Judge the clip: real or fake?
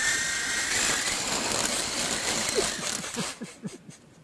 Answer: real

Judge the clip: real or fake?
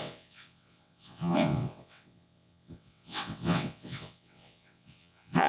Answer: fake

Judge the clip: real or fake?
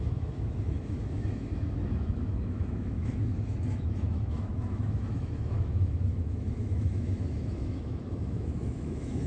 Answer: fake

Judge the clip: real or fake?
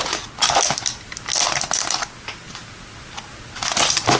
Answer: real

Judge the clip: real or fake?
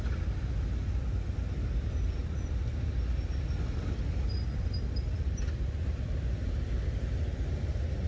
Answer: real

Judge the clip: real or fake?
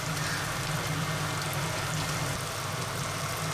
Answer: real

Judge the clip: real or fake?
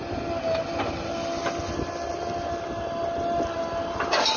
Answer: real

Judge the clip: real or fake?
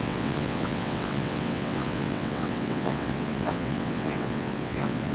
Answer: fake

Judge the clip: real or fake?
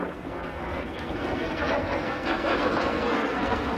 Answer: fake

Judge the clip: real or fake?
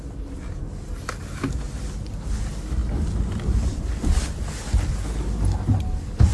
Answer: real